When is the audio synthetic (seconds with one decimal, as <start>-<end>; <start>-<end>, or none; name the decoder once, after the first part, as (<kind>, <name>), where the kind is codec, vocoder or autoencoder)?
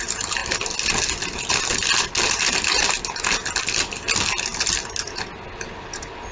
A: none